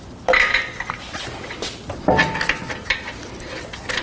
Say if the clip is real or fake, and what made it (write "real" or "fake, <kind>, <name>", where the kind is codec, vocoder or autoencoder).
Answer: real